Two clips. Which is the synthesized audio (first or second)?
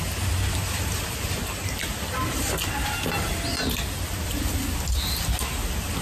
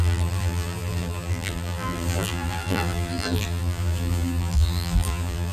second